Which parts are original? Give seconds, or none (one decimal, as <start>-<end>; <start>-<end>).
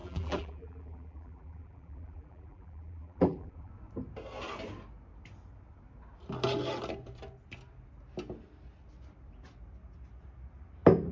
3.7-11.1